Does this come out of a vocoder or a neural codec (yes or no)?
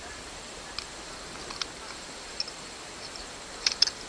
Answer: no